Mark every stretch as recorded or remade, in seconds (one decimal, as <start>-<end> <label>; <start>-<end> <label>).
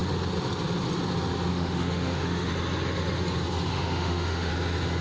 0.0-1.5 recorded; 1.5-2.5 remade; 2.5-3.7 recorded; 3.7-4.5 remade; 4.5-5.0 recorded